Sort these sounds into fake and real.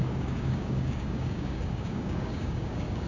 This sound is fake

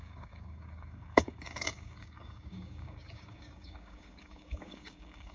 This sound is fake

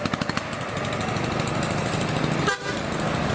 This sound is real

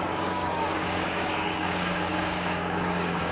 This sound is fake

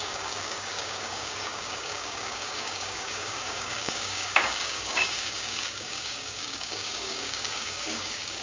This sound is fake